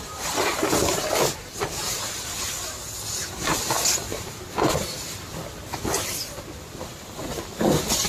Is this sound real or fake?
real